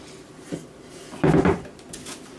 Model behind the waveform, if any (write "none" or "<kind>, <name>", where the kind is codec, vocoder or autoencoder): none